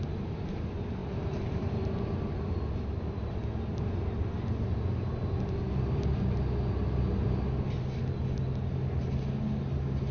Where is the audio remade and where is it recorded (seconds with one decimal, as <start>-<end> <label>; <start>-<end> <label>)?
0.0-10.1 recorded